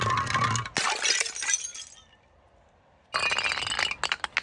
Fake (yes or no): no